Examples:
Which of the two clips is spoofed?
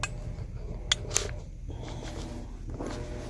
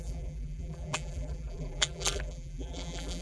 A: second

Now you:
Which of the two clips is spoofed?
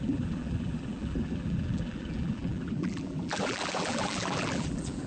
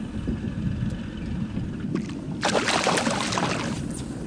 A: first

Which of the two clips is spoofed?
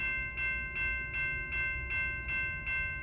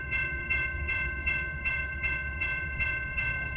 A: second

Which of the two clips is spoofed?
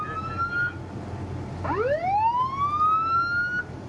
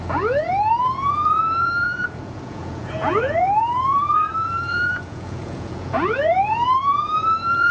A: second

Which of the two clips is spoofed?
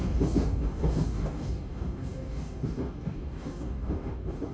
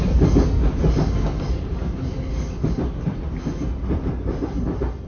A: first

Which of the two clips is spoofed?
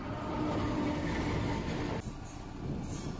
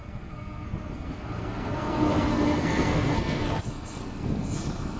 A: second